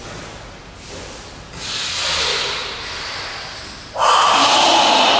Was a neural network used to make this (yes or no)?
no